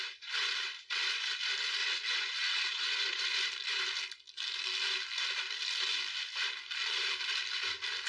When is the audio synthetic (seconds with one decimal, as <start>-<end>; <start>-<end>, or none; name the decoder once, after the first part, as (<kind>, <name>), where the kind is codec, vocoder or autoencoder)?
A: 1.8-3.2 (vocoder, Vocos)